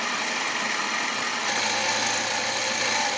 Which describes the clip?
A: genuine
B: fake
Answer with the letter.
A